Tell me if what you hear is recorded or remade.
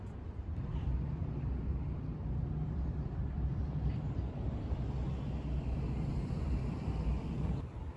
remade